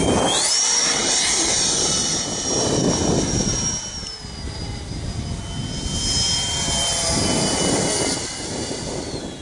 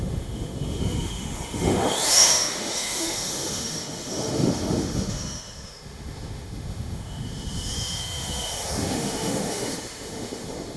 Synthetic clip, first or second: second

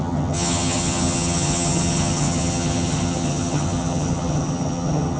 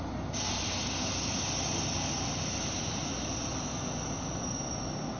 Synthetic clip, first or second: first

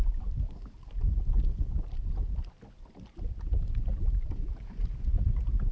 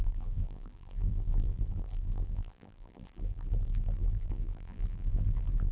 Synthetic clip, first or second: second